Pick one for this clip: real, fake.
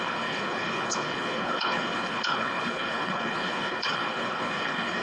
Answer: fake